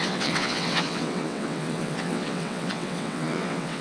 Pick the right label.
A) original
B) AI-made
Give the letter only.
B